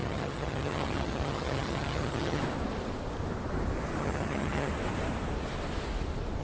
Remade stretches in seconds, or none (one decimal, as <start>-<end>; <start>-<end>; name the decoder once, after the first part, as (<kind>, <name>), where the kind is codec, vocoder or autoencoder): 0.0-2.4 (vocoder, HiFi-GAN); 4.0-4.7